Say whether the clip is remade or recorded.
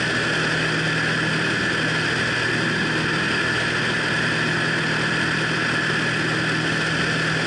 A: recorded